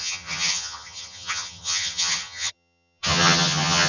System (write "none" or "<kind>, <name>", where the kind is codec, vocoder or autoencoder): vocoder, HiFi-GAN